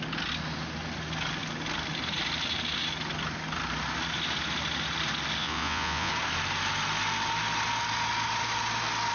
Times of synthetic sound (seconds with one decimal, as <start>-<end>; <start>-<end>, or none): 5.4-6.1